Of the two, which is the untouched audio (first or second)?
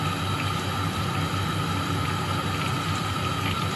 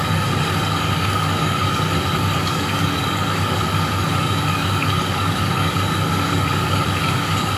first